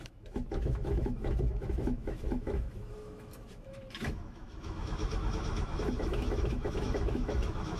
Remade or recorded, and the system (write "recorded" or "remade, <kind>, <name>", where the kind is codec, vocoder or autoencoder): remade, autoencoder, DAC-VAE